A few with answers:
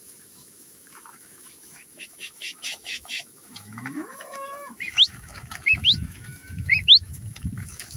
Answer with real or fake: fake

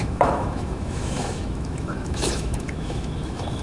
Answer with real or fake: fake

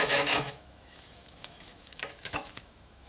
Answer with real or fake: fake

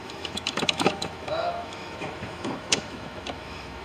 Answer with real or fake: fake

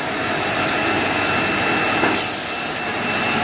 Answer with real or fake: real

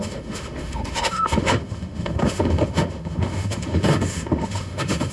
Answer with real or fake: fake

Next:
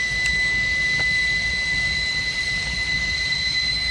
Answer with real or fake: real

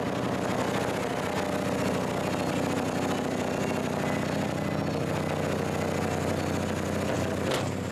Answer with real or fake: real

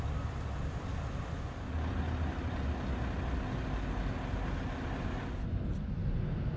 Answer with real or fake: real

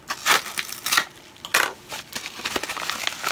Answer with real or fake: real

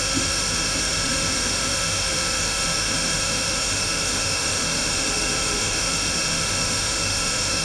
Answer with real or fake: fake